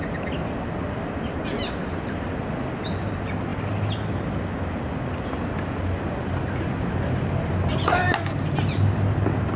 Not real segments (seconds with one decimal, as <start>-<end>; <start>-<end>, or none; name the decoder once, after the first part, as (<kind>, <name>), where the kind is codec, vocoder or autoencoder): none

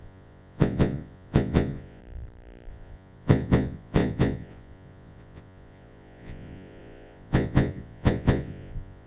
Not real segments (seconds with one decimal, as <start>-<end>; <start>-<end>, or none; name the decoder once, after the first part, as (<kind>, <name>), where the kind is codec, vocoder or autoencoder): 0.0-2.0 (vocoder, Vocos); 2.7-9.1

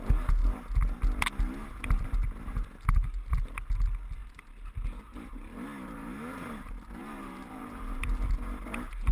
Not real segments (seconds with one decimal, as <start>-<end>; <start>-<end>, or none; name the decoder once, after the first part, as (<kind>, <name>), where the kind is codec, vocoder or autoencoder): 4.2-5.3 (vocoder, BigVGAN v2); 7.0-8.0

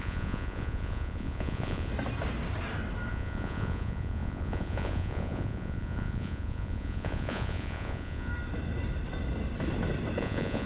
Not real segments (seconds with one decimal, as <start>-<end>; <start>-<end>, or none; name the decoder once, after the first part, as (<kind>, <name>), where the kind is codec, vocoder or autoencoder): 0.0-1.9 (vocoder, Vocos); 3.1-8.3; 10.2-10.7

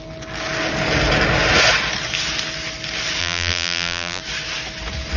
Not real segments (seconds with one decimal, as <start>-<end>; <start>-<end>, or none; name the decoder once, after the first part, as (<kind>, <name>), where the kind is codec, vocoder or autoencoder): 3.2-4.2 (vocoder, BigVGAN v2)

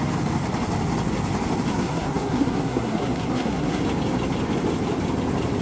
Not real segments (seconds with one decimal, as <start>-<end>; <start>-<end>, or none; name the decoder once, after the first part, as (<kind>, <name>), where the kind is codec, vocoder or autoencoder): 1.7-3.8 (codec, SNAC)

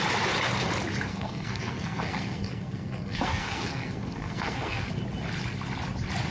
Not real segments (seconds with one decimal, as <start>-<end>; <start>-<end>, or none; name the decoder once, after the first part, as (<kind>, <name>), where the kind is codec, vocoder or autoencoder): 1.1-4.9 (codec, SNAC)